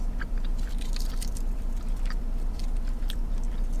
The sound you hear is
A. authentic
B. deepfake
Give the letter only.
B